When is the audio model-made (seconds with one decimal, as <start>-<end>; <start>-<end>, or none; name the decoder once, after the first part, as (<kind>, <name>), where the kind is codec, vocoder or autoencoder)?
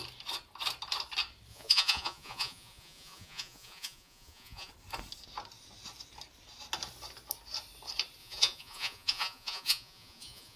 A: 1.5-4.7 (vocoder, Vocos); 8.2-10.6